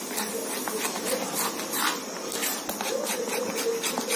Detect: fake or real real